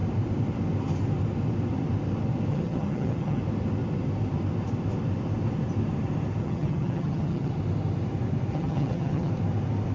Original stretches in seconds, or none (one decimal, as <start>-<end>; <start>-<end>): 0.0-2.5; 3.4-6.4; 7.5-8.5; 9.3-9.9